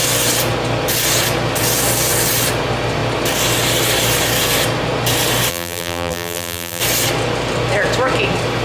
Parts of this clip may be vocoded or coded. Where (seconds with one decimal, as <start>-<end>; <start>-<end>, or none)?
5.5-6.8